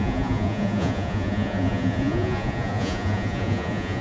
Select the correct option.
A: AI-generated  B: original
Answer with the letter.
A